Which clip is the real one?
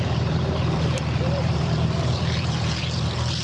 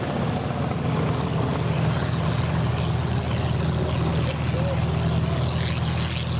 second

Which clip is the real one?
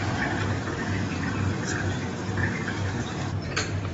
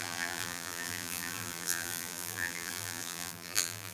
first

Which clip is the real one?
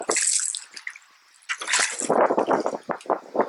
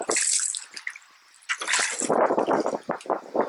first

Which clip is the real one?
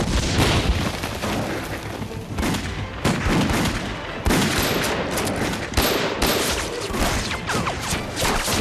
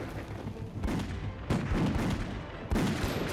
second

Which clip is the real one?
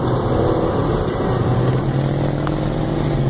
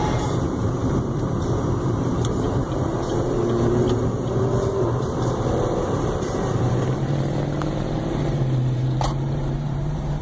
first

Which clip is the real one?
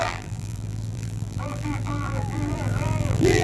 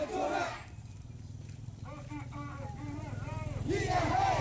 second